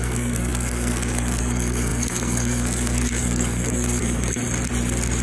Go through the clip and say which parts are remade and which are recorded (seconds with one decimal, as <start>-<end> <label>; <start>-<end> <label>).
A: 0.0-4.4 remade; 4.4-5.2 recorded